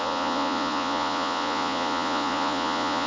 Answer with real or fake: fake